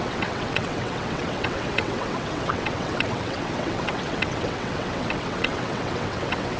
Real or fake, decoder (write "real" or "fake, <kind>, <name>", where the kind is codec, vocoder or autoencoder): fake, vocoder, WaveNeXt